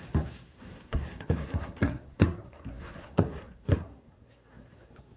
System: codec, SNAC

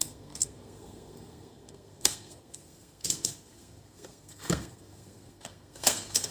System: codec, SNAC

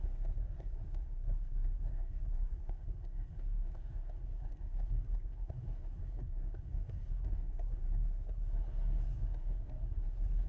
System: codec, SNAC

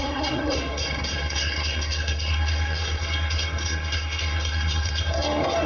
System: codec, SNAC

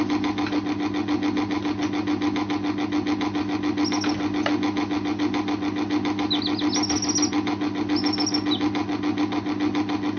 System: none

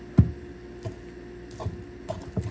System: none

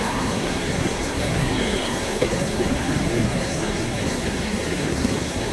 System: codec, SNAC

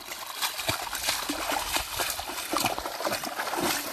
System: none